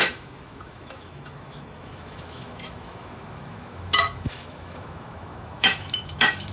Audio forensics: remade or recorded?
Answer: remade